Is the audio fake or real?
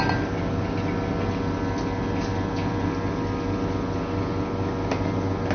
real